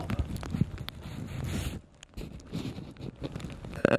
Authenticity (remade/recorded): recorded